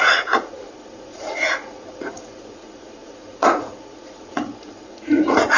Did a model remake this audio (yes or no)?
yes